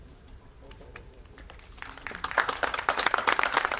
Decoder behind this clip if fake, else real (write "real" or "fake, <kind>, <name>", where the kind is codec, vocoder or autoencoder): fake, vocoder, BigVGAN v2